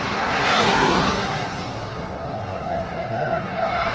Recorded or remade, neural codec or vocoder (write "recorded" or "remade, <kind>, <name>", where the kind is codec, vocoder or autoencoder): remade, codec, SNAC